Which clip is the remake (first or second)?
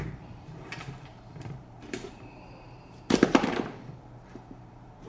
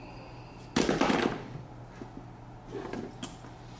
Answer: first